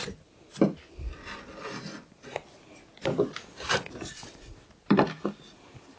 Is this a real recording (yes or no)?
yes